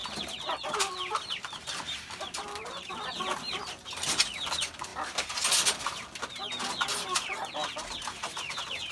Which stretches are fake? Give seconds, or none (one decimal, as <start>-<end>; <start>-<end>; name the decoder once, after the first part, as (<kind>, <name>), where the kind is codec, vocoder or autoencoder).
0.0-2.9 (vocoder, BigVGAN v2); 3.3-4.2